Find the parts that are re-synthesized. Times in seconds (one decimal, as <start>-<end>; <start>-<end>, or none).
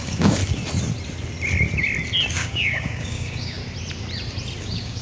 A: 0.0-0.4; 2.3-3.6; 4.6-5.0